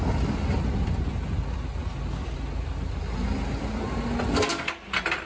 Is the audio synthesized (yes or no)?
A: no